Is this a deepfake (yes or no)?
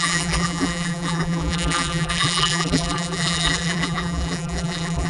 yes